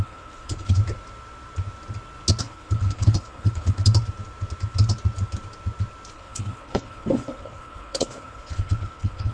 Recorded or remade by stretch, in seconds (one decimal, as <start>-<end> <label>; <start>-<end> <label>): 0.0-0.8 remade; 0.8-2.4 recorded; 2.4-3.8 remade; 3.8-6.1 recorded; 6.1-9.3 remade

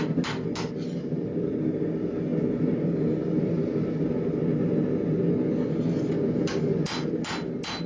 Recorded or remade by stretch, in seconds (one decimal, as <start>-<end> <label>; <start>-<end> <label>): 0.0-7.9 recorded

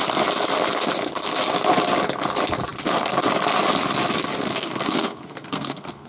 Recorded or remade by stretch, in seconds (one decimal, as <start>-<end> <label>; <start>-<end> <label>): 0.0-4.5 recorded; 4.5-6.1 remade

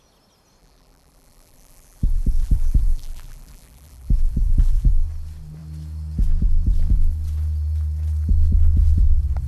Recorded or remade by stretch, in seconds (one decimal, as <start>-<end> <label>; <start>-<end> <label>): 0.0-0.6 recorded; 0.6-4.9 remade; 4.9-9.5 recorded

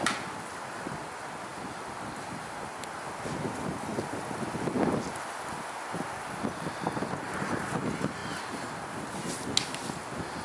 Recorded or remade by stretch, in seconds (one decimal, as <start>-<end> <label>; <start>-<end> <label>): 0.0-1.5 recorded; 1.5-2.8 remade; 2.8-10.4 recorded